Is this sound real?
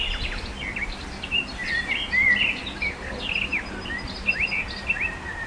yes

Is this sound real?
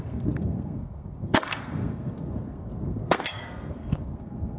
no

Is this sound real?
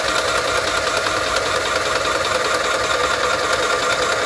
yes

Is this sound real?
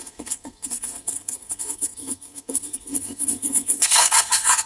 no